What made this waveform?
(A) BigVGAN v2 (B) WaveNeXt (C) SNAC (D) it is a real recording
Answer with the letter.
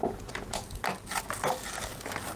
D